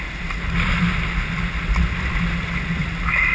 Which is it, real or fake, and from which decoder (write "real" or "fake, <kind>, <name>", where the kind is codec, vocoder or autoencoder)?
real